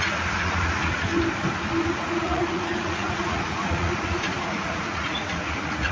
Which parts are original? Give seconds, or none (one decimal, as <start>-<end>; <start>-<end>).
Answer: 1.1-1.9